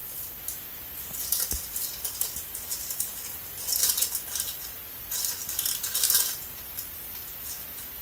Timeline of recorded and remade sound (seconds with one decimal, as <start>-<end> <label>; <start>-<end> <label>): 0.0-8.0 recorded